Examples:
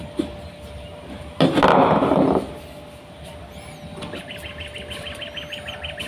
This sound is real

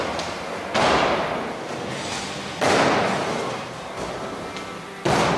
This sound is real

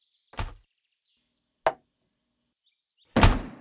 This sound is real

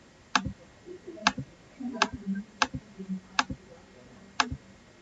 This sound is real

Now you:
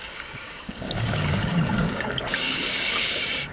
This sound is fake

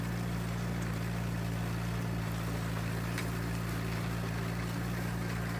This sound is fake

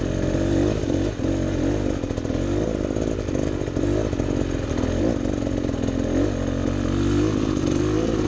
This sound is real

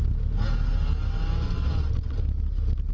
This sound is real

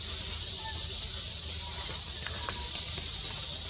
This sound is fake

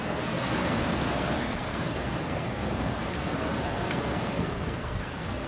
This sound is fake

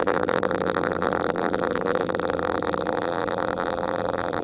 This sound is fake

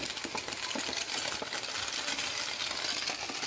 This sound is real